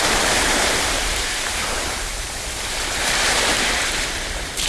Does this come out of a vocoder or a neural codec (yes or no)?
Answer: yes